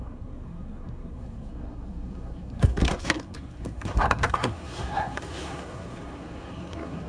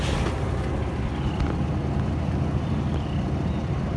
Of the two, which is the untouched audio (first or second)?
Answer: second